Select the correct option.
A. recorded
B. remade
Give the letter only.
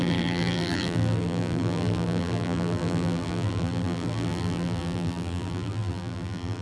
B